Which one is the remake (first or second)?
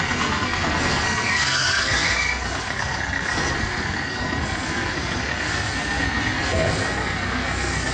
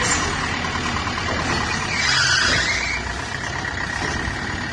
first